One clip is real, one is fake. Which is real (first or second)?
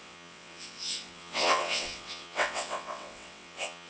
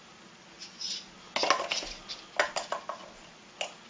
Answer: second